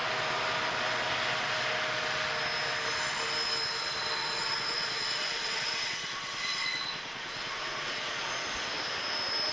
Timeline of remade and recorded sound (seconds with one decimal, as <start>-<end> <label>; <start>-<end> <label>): 0.0-4.2 recorded; 4.2-8.4 remade; 8.4-9.5 recorded